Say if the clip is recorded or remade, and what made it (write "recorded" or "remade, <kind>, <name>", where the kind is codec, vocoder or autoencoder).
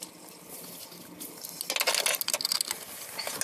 recorded